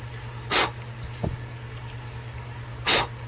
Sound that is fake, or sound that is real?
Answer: real